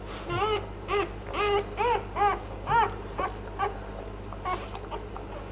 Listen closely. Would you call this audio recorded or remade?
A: recorded